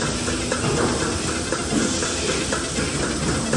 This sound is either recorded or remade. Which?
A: recorded